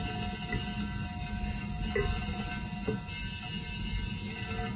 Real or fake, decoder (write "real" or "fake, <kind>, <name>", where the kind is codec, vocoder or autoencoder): real